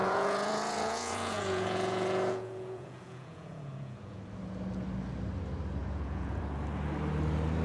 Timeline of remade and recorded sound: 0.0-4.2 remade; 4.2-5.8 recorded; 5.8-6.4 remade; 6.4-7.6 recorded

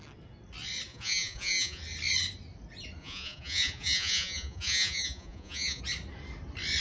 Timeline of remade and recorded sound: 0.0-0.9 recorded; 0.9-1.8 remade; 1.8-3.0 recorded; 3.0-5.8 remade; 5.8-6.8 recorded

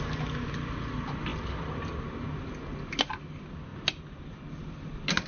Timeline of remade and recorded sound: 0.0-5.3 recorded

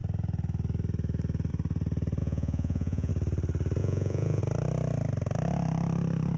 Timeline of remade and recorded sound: 0.0-2.2 recorded; 2.2-3.1 remade; 3.1-3.8 recorded; 3.8-4.4 remade; 4.4-6.4 recorded

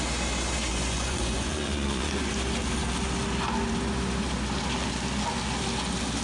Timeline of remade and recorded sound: 0.0-0.7 recorded; 0.7-2.3 remade; 2.3-6.2 recorded